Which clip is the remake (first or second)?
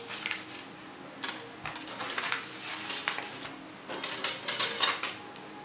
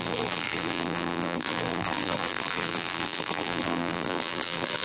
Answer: second